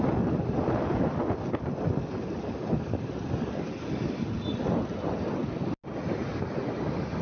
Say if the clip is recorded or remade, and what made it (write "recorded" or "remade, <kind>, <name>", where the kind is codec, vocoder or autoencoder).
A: recorded